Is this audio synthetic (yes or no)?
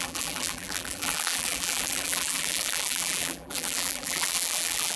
yes